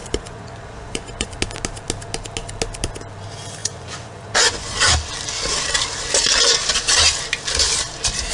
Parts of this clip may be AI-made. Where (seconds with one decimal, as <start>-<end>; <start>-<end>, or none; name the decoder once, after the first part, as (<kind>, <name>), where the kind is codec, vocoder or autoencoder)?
0.0-1.4 (vocoder, Vocos); 3.6-4.8